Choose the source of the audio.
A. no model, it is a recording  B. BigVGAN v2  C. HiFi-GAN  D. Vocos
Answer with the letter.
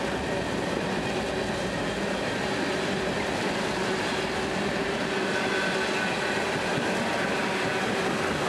B